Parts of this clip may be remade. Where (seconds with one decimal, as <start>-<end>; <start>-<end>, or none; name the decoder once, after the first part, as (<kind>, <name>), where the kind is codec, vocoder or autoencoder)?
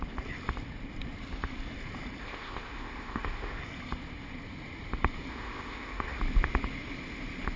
2.2-3.6 (codec, ZipCodec); 5.3-6.2